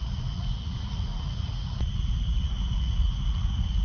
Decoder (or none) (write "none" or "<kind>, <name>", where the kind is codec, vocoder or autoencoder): vocoder, Vocos